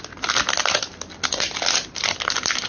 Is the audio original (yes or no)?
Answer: yes